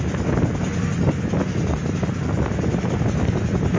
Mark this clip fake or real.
real